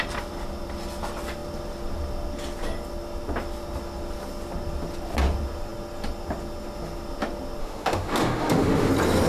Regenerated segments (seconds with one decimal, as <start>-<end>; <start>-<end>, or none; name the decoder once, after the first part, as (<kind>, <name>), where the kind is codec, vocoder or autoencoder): 7.6-8.9 (autoencoder, DAC-VAE)